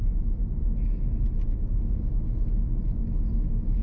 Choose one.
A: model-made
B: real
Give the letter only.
B